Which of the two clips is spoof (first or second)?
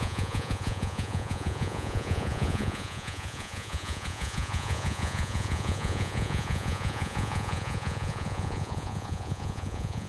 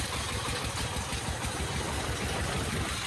first